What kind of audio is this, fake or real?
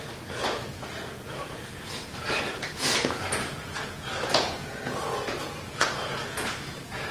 fake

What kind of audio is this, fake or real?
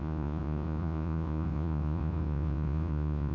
fake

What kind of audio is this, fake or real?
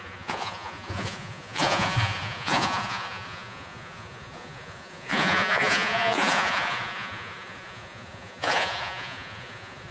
fake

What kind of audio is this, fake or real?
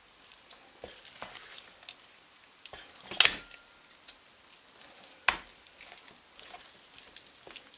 real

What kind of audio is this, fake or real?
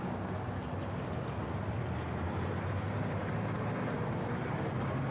real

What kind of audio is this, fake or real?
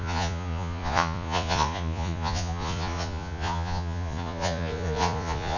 fake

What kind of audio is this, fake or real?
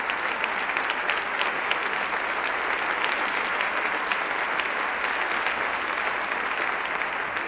real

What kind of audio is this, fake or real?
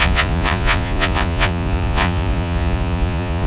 fake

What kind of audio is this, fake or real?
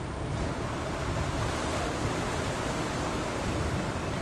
real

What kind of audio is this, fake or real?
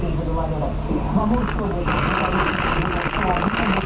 real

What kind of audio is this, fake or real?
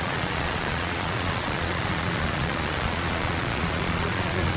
fake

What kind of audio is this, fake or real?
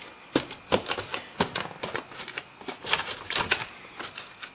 real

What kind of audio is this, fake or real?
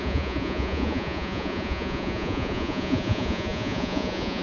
fake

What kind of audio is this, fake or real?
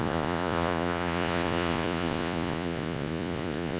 fake